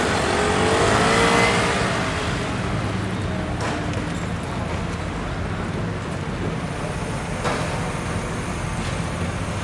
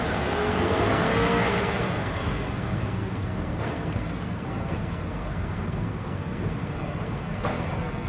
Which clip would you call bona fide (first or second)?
first